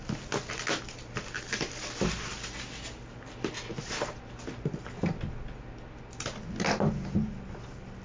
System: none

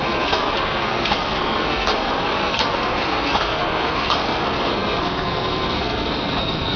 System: codec, SNAC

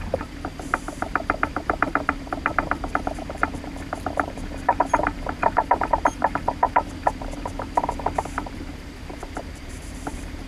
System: vocoder, BigVGAN v2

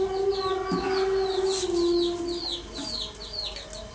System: none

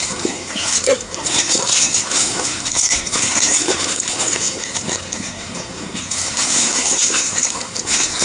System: codec, SNAC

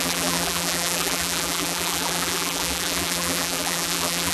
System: vocoder, BigVGAN v2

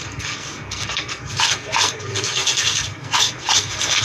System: codec, SNAC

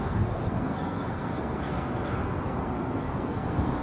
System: codec, SNAC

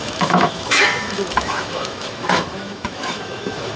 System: autoencoder, DAC-VAE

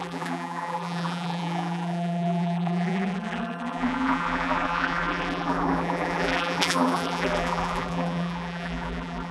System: vocoder, BigVGAN v2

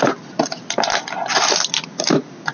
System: vocoder, BigVGAN v2